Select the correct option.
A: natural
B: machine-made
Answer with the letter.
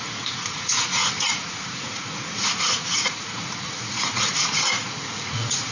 B